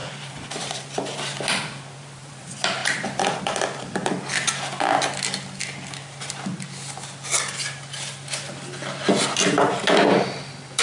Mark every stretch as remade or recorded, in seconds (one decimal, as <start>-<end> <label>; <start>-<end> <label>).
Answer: 0.0-4.0 remade; 4.0-9.2 recorded; 9.2-10.8 remade